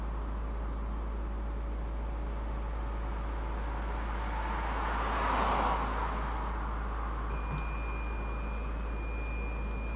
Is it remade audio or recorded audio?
recorded